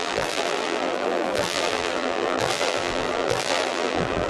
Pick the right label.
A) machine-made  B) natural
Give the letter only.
A